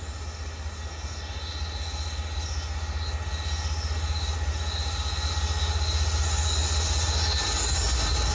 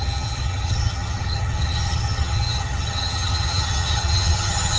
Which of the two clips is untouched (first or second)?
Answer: first